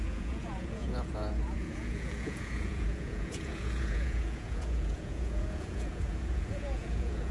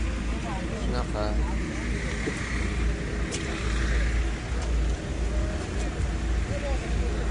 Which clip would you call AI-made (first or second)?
first